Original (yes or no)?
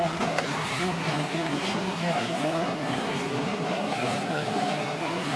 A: no